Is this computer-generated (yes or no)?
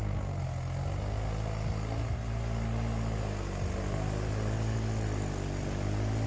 no